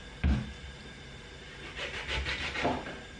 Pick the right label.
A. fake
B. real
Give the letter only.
B